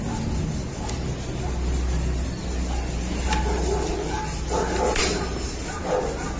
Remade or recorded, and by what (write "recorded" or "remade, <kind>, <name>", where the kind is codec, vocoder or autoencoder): recorded